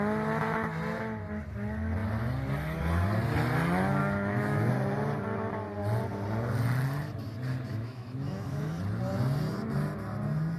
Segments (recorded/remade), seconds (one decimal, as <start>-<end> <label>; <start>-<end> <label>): 0.0-4.0 recorded; 4.0-4.7 remade; 4.7-7.7 recorded; 7.7-8.7 remade; 8.7-10.6 recorded